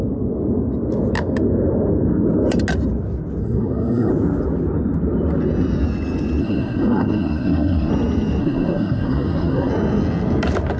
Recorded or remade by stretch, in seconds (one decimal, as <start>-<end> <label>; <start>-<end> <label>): 0.0-3.4 recorded; 3.4-4.1 remade; 4.1-6.4 recorded; 6.4-7.9 remade; 7.9-8.4 recorded; 8.4-9.7 remade; 9.7-10.8 recorded